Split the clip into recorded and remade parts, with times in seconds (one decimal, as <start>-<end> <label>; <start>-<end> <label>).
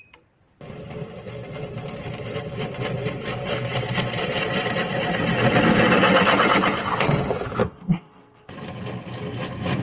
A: 0.0-7.6 recorded; 7.6-8.5 remade; 8.5-9.8 recorded